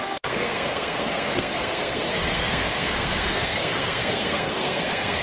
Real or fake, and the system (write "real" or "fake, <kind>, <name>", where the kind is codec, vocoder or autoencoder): fake, codec, SNAC